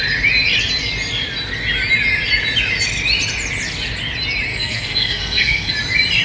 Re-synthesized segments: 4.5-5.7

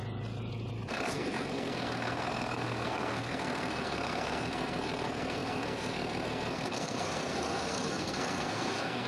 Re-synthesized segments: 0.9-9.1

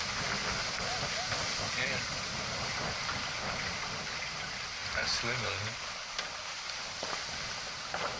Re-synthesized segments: none